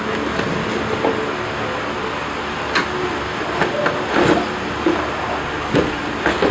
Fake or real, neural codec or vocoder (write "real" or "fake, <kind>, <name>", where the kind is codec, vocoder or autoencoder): real